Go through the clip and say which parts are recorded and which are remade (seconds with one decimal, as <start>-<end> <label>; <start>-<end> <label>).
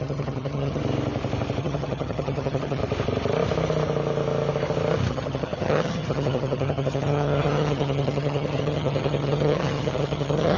0.0-0.8 remade; 0.8-1.6 recorded; 1.6-2.8 remade; 2.8-5.1 recorded; 5.1-10.6 remade